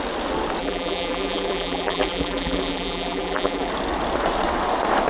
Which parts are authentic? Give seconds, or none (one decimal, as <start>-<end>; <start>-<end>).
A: 0.0-0.6; 3.7-5.1